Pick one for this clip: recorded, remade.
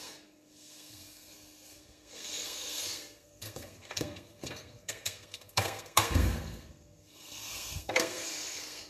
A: remade